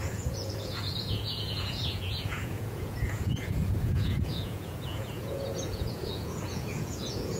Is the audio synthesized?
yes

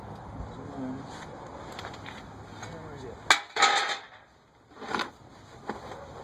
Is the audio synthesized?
no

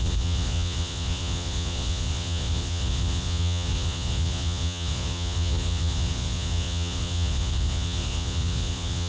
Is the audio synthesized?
yes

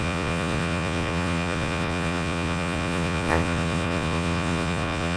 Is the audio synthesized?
yes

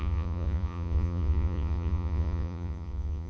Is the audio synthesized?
yes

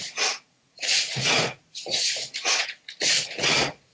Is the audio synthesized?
yes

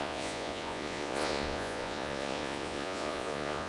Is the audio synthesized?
yes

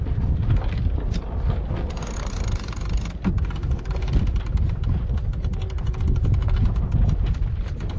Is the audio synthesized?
no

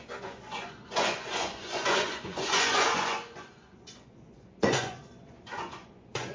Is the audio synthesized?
yes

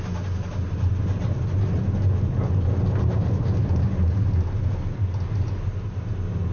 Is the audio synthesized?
no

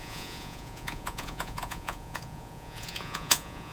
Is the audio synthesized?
yes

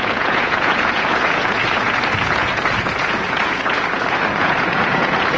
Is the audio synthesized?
yes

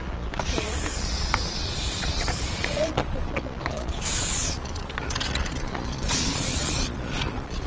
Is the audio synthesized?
yes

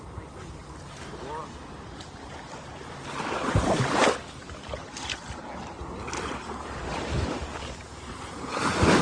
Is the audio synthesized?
no